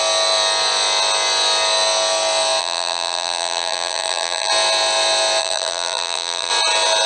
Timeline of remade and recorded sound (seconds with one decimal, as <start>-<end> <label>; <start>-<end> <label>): 0.0-2.6 recorded; 2.6-4.5 remade; 4.5-5.4 recorded; 5.4-6.5 remade; 6.5-7.1 recorded